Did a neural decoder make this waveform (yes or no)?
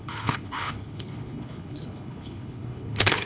yes